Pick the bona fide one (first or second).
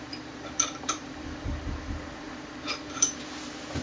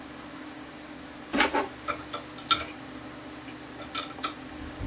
second